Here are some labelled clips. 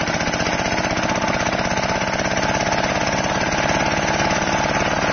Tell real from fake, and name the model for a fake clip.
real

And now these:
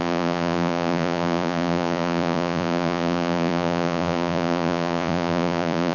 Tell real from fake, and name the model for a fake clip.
fake, vocoder, Vocos